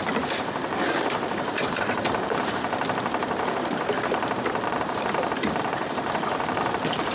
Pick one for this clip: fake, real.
fake